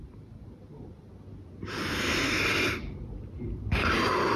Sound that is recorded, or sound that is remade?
recorded